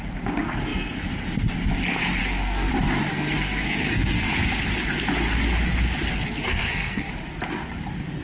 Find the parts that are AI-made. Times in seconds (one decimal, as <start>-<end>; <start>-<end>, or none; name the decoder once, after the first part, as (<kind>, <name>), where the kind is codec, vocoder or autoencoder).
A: 2.2-2.7 (codec, SNAC); 3.1-4.3; 6.4-7.1